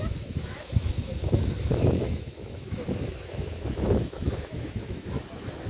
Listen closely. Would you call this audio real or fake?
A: fake